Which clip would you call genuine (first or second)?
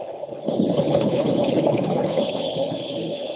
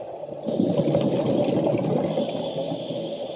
second